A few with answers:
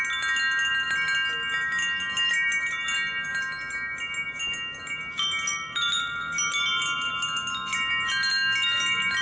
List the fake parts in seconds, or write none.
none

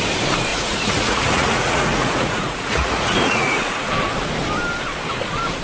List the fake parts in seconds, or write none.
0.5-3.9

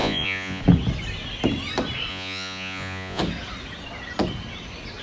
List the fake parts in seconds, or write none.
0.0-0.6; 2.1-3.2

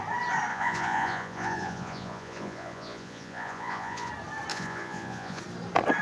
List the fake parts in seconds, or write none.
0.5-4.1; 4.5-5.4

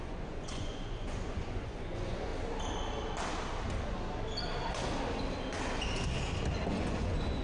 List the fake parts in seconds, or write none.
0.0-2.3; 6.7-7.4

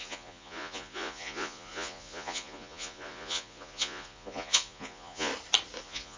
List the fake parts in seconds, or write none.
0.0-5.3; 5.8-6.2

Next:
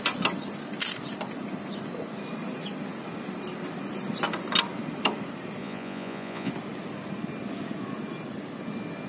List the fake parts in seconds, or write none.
5.6-6.5